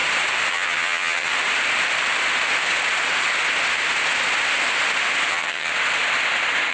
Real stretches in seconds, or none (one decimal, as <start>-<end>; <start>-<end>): 0.0-0.5; 1.3-5.3; 5.7-6.7